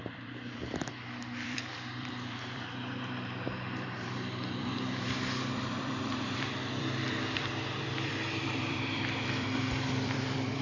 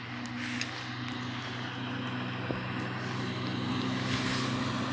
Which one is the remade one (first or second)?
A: first